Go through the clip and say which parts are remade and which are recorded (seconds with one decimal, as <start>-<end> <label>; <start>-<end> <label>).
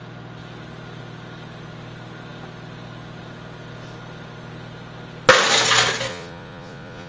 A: 0.0-6.1 recorded; 6.1-7.1 remade